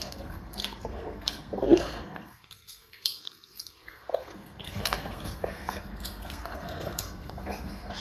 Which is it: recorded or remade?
remade